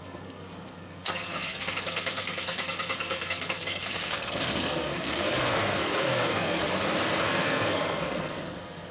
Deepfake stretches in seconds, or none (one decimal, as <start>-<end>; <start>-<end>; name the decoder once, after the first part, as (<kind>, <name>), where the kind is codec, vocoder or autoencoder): 0.0-6.6 (codec, SNAC); 7.2-8.9